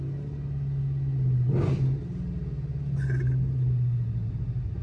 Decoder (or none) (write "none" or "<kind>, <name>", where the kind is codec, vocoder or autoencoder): none